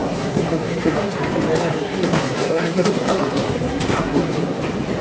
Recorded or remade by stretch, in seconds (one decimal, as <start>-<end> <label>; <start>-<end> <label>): 0.0-1.2 remade; 1.2-1.6 recorded; 1.6-4.6 remade; 4.6-5.0 recorded